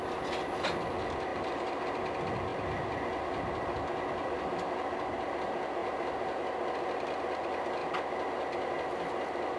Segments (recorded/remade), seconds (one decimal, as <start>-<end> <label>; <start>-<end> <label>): 0.0-1.3 recorded; 1.3-1.9 remade; 1.9-5.8 recorded; 5.8-6.4 remade; 6.4-9.6 recorded